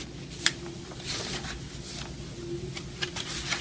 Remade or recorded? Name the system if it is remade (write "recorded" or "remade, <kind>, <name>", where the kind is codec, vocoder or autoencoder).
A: recorded